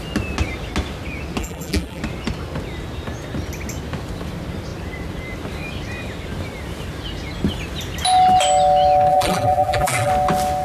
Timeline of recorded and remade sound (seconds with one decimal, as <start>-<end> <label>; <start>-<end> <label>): 0.0-1.4 recorded; 1.4-2.0 remade; 2.0-9.1 recorded; 9.1-10.1 remade; 10.1-10.6 recorded